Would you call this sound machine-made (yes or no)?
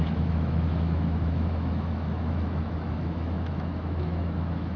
yes